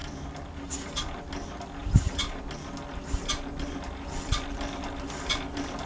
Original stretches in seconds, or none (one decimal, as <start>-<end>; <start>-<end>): 0.0-1.8; 2.4-5.9